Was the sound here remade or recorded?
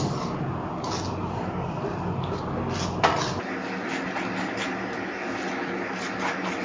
recorded